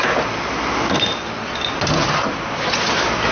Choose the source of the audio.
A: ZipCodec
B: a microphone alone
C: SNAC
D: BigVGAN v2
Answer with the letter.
B